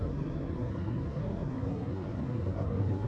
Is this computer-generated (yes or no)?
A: yes